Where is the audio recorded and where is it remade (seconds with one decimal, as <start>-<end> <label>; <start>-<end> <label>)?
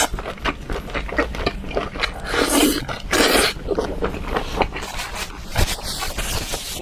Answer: 0.0-6.8 recorded